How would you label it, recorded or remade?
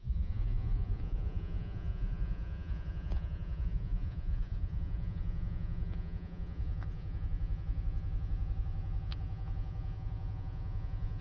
remade